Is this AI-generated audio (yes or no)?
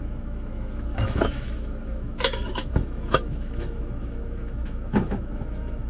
yes